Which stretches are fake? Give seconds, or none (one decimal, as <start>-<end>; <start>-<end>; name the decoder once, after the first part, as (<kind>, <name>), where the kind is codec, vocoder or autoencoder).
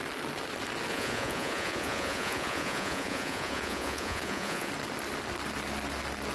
0.9-4.7 (vocoder, Vocos)